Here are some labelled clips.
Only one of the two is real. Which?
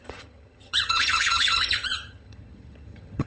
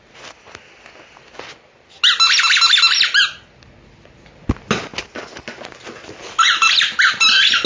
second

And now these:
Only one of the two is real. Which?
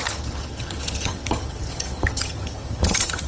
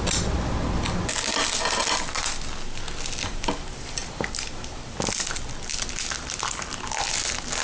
second